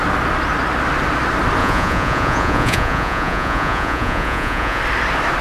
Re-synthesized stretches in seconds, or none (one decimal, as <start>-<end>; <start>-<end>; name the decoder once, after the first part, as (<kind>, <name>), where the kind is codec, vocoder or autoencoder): 1.6-4.8 (vocoder, Vocos)